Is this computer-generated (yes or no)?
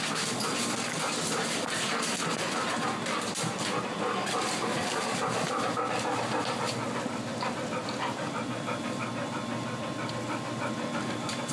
no